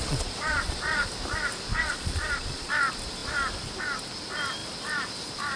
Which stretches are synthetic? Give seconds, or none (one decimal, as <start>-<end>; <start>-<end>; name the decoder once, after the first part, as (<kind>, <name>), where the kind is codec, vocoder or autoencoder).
0.0-1.1 (vocoder, Vocos); 1.7-2.7